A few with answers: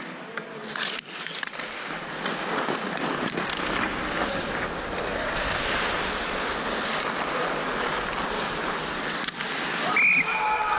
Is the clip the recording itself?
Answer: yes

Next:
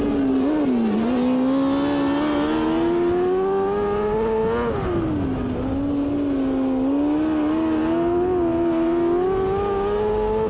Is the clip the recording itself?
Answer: yes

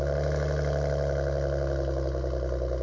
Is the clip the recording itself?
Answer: yes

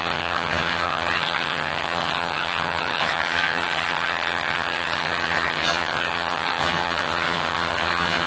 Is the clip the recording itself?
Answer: no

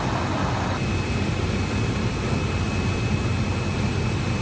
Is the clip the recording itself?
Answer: yes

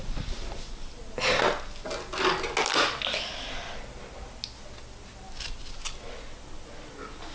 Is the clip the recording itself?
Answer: yes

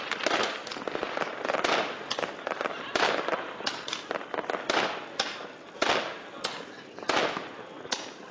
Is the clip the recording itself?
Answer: yes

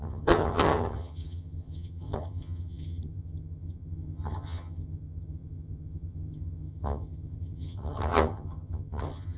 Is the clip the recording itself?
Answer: no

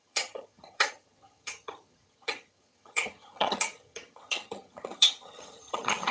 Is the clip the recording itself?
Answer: no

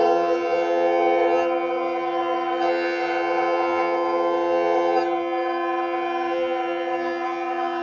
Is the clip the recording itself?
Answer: no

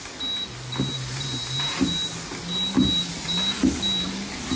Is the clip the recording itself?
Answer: yes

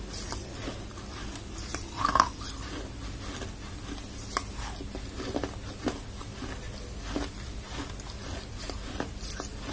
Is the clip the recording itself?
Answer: yes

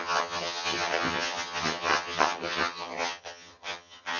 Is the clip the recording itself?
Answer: no